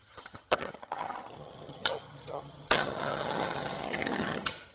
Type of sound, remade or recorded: remade